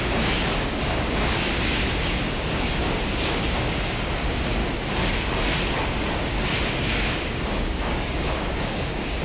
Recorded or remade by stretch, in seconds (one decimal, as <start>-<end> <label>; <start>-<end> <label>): 0.0-4.6 remade; 4.6-6.7 recorded; 6.7-9.2 remade